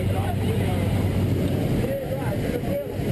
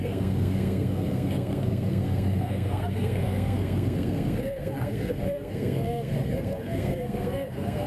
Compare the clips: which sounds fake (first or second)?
second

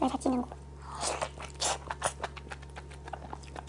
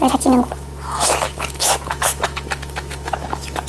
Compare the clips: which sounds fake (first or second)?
second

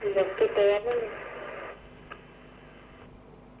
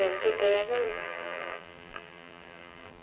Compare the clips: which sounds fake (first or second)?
second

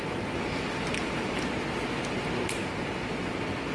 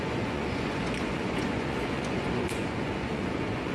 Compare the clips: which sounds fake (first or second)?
second